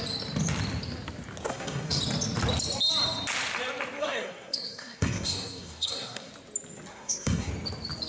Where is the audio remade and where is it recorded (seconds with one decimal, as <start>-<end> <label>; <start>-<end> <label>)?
0.0-1.5 recorded; 1.5-2.0 remade; 2.0-4.0 recorded; 4.0-6.3 remade; 6.3-6.9 recorded; 6.9-7.5 remade; 7.5-8.1 recorded